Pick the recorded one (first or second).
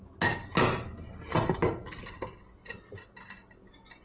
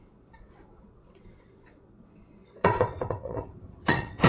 first